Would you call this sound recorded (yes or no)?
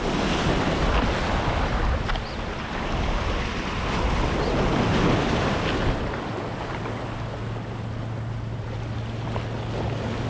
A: yes